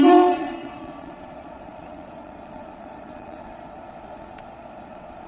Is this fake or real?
fake